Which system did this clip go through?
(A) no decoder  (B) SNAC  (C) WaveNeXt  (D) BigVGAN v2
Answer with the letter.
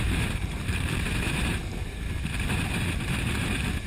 D